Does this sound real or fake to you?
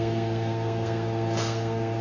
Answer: fake